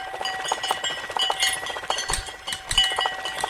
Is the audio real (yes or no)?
no